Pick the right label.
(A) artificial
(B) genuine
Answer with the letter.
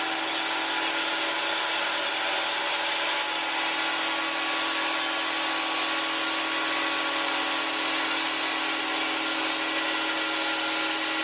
B